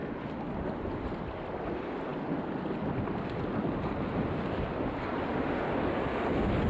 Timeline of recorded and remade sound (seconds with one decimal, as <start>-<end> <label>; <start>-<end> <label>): 0.0-6.7 recorded